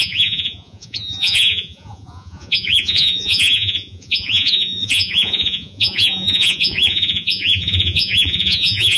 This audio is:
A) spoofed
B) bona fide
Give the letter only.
A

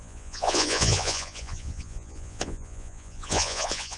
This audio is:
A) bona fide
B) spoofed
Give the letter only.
B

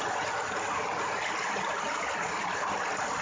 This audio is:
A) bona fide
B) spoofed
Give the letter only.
A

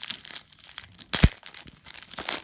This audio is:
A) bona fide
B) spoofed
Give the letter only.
A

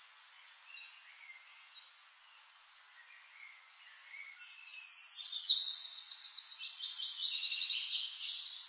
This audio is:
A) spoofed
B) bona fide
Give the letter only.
A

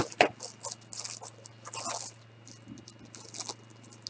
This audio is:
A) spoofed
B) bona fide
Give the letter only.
B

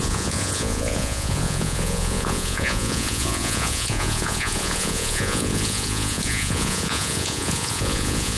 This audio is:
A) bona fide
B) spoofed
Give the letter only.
B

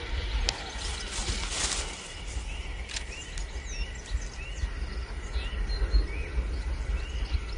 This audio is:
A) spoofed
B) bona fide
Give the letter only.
B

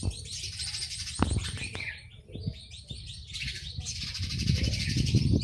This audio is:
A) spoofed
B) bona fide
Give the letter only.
B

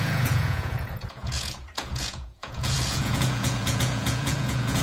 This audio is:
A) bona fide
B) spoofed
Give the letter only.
B